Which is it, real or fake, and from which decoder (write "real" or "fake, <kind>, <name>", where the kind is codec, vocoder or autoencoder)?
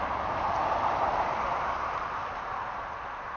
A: fake, vocoder, BigVGAN v2